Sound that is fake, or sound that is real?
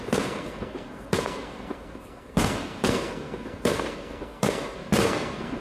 fake